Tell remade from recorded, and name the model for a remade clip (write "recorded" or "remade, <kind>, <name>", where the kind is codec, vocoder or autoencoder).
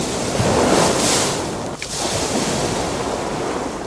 recorded